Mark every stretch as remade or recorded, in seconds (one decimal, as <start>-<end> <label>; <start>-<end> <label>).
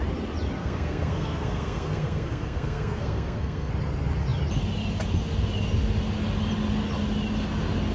0.0-0.6 recorded; 0.6-3.7 remade; 3.7-7.9 recorded